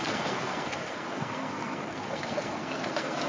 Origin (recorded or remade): remade